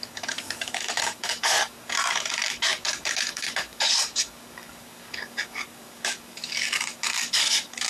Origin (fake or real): fake